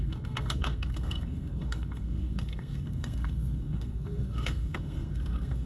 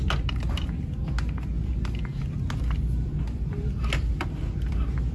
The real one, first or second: second